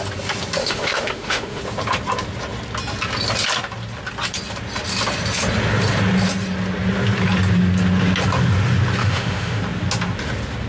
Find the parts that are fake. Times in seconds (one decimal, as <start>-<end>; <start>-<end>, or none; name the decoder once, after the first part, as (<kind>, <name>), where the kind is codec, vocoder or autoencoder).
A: 0.6-1.6 (autoencoder, DAC-VAE); 9.0-9.6

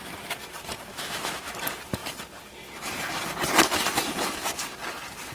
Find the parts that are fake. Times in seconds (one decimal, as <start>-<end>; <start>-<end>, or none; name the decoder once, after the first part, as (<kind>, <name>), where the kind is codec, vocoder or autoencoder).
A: 0.9-1.5 (autoencoder, DAC-VAE)

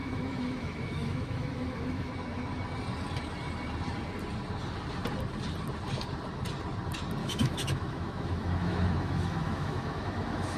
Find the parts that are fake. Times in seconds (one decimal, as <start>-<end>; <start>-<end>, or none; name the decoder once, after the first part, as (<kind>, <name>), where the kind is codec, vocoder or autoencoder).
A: 0.0-2.1 (autoencoder, DAC-VAE); 7.2-10.6

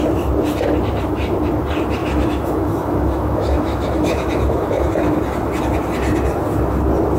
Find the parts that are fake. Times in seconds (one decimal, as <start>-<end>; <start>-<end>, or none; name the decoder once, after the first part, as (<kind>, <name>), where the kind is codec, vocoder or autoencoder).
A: 2.0-5.2 (autoencoder, DAC-VAE)

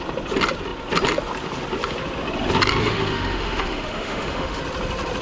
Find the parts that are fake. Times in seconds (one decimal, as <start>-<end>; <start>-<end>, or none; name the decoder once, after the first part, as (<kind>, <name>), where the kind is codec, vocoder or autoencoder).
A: 2.8-4.6 (autoencoder, DAC-VAE)

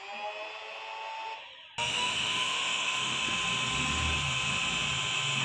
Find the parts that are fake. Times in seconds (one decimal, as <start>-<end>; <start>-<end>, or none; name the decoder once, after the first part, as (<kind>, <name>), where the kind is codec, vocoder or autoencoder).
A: 1.9-3.2 (autoencoder, DAC-VAE)

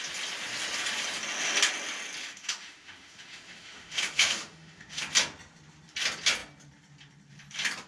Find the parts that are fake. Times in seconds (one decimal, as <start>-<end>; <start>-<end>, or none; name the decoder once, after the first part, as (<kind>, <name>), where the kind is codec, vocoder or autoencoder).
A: 2.2-5.0 (autoencoder, DAC-VAE)